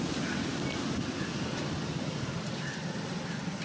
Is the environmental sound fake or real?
real